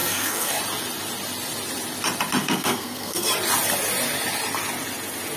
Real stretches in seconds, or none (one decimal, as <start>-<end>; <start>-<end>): 0.6-2.4; 3.3-5.4